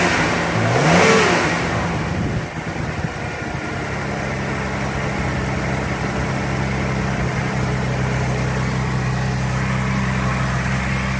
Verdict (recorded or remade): recorded